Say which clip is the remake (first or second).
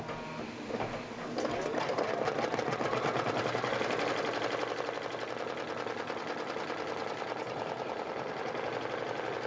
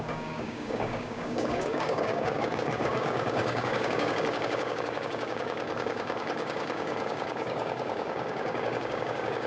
second